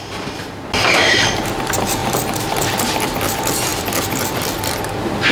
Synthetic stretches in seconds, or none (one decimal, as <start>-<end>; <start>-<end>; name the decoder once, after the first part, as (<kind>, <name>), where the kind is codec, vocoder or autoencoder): 2.0-3.1 (vocoder, BigVGAN v2); 3.7-4.8